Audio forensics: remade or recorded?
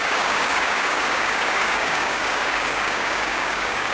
remade